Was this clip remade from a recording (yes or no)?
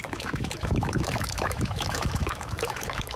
yes